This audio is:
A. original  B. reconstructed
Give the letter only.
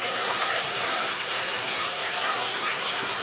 B